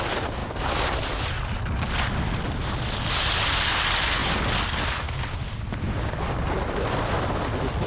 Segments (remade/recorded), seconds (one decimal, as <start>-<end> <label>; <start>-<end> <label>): 0.0-7.9 recorded